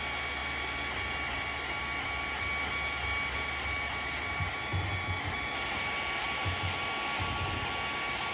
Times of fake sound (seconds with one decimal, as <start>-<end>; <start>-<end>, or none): none

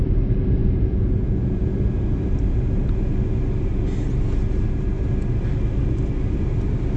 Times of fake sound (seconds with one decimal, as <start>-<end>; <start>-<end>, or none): 0.6-1.7

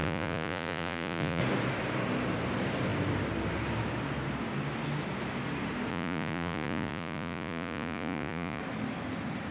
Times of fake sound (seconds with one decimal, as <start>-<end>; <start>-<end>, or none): 0.0-1.4; 5.9-8.6

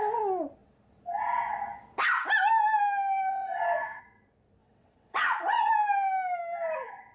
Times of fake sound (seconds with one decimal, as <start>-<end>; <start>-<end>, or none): 3.3-4.0; 4.6-5.7

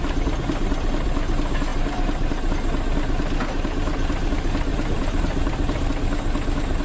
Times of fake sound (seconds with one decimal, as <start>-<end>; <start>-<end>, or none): 1.7-2.5; 4.7-5.9

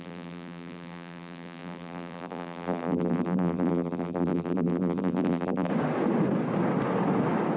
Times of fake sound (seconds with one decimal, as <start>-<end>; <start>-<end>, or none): 0.0-5.7

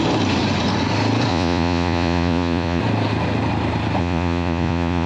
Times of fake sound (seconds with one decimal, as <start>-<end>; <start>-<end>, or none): 1.3-2.8; 4.0-5.1

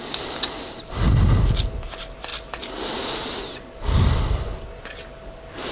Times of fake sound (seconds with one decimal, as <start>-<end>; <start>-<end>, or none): none